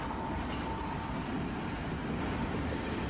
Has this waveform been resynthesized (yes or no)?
no